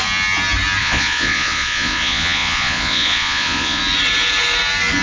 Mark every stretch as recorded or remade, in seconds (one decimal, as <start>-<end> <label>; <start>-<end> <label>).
0.0-0.8 recorded; 0.8-3.8 remade; 3.8-5.0 recorded